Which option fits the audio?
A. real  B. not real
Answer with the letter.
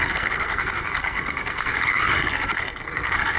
B